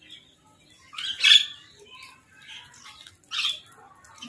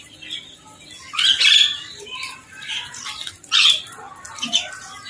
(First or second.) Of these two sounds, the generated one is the second